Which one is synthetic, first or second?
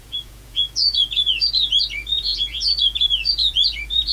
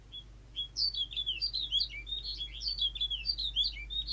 first